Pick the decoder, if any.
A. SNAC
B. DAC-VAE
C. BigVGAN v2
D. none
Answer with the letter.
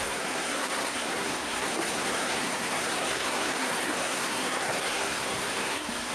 A